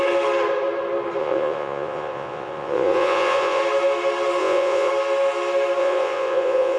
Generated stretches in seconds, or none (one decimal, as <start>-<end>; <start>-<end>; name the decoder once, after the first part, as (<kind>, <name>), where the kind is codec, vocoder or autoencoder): 1.2-3.6 (vocoder, Vocos); 4.4-4.9; 5.8-6.8